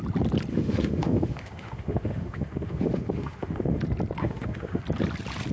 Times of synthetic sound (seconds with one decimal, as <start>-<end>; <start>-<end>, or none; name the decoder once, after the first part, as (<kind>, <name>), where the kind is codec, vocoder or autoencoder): 0.5-3.8 (autoencoder, DAC-VAE); 4.2-4.8